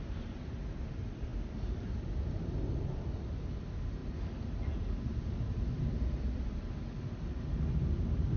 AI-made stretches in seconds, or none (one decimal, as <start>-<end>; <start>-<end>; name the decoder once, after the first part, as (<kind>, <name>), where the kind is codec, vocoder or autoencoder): none